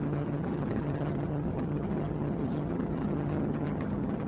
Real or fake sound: fake